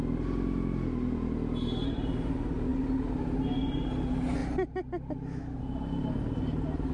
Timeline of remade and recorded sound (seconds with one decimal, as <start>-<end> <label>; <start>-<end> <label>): 0.0-6.9 recorded